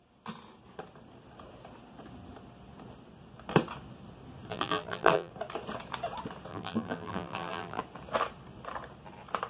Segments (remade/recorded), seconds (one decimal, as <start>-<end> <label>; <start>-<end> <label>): 0.0-4.5 recorded; 4.5-5.3 remade; 5.3-6.5 recorded; 6.5-7.8 remade; 7.8-9.5 recorded